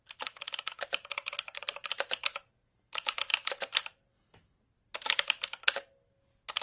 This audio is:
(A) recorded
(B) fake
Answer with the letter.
A